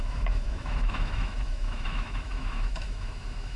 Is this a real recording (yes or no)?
no